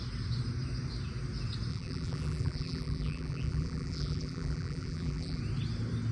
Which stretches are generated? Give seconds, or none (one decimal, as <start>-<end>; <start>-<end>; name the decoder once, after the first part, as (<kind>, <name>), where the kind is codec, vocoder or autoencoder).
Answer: 1.7-5.4 (vocoder, BigVGAN v2)